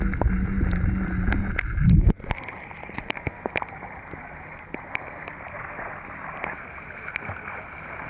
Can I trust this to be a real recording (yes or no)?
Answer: yes